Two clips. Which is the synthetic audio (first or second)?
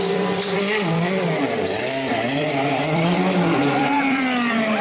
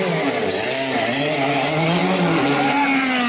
first